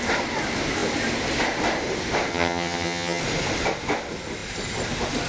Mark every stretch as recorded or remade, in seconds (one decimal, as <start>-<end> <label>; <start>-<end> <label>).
0.0-2.3 recorded; 2.3-3.2 remade; 3.2-5.3 recorded